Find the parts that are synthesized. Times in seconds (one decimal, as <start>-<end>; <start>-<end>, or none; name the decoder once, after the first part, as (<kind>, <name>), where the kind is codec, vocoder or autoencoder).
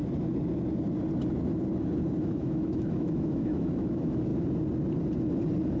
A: 2.2-4.3 (autoencoder, DAC-VAE)